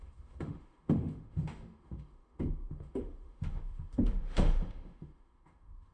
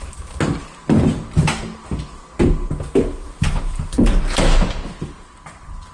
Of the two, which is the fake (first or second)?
first